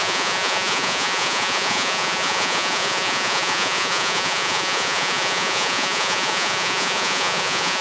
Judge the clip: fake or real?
fake